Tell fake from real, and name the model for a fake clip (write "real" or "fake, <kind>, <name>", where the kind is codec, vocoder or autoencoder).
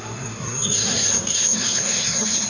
fake, codec, SNAC